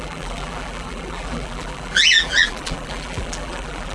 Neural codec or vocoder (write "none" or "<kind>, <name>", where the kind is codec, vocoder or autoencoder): vocoder, BigVGAN v2